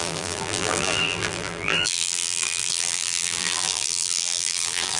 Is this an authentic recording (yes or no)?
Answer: no